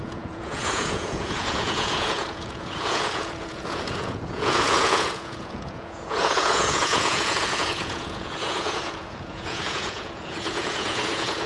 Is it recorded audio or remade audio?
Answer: remade